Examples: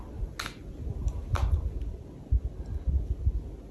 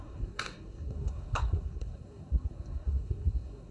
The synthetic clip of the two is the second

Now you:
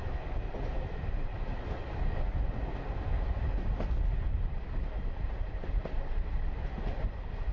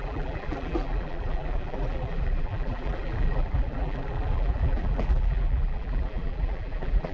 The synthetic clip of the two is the second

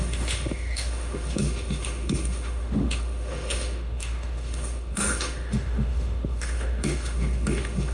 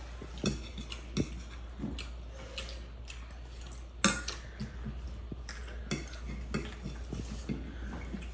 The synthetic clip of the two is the first